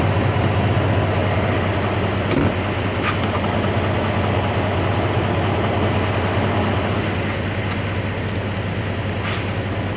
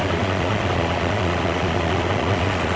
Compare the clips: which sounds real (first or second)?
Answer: first